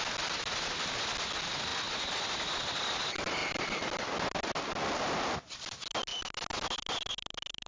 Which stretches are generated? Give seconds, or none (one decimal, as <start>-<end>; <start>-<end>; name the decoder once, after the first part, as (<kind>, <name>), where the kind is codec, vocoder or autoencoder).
none